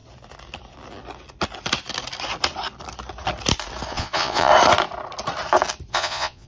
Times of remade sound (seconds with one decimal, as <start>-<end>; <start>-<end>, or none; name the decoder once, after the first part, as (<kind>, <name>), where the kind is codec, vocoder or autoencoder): 3.9-4.5 (vocoder, Vocos); 5.9-6.5